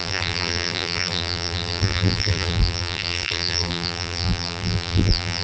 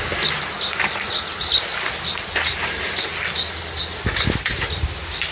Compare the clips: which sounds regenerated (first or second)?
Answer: first